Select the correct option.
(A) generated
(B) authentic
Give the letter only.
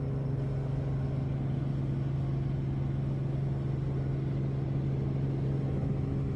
B